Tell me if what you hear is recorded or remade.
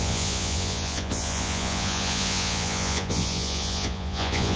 remade